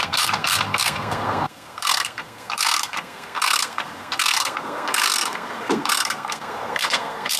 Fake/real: fake